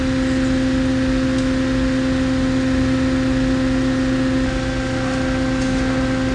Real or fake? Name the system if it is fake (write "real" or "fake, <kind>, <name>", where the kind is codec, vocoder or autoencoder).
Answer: real